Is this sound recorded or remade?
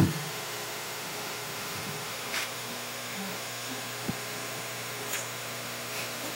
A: remade